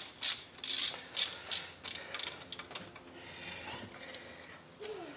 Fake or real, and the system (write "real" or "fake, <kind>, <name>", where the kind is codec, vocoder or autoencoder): real